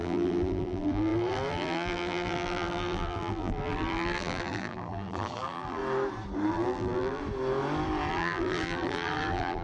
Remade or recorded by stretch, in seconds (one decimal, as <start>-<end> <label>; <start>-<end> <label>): 0.0-5.8 remade; 5.8-6.5 recorded; 6.5-7.2 remade; 7.2-8.1 recorded; 8.1-9.6 remade